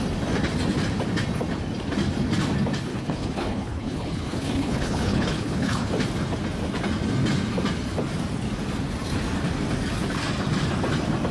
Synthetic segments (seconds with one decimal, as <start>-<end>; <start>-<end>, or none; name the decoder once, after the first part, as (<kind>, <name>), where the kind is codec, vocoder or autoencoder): 2.9-5.9 (codec, HILCodec)